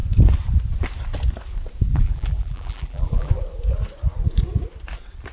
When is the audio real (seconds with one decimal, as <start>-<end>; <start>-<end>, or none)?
0.0-1.9; 3.3-5.3